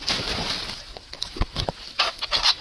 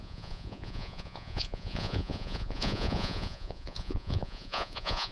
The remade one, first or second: second